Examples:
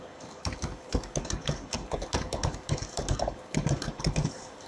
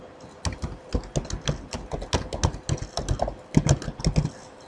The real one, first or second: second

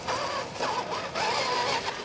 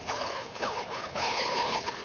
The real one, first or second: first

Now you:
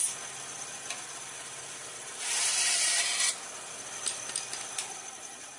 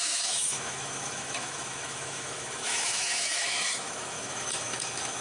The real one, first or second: first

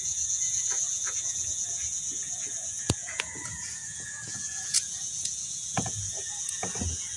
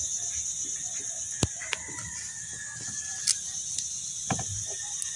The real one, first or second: second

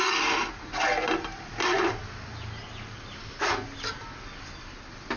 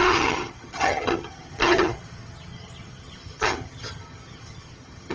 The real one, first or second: first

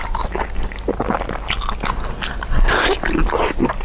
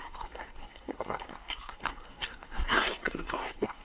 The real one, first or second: first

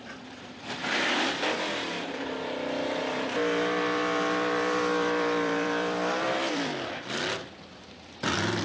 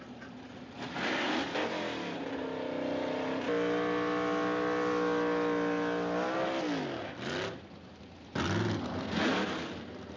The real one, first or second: second